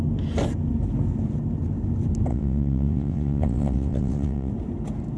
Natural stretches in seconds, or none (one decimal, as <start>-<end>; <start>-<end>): 0.0-2.3; 4.5-5.2